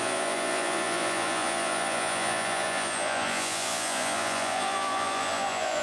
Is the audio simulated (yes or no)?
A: yes